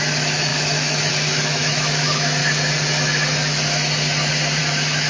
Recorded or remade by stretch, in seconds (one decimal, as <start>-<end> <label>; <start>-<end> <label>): 0.0-2.4 remade; 2.4-4.6 recorded; 4.6-5.1 remade